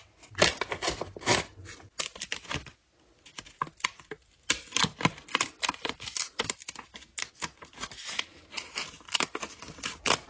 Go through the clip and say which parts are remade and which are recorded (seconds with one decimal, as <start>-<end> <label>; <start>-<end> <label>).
0.0-10.3 recorded